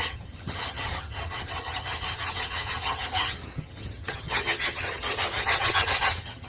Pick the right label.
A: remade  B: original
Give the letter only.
A